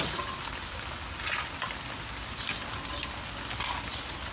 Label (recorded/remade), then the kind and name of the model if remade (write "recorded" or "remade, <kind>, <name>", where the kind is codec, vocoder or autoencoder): recorded